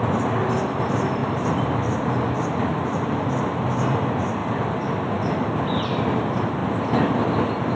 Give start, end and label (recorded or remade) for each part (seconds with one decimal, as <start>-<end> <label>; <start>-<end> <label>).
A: 0.0-1.2 recorded; 1.2-3.4 remade; 3.4-4.4 recorded; 4.4-6.0 remade; 6.0-7.8 recorded